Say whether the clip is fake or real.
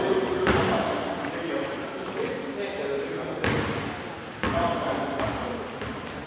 real